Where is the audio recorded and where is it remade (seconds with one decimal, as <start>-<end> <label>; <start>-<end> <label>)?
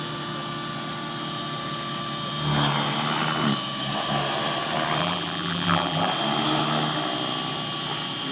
0.0-5.0 recorded; 5.0-6.1 remade; 6.1-8.3 recorded